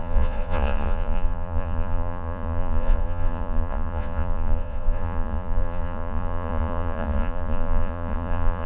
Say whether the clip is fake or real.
fake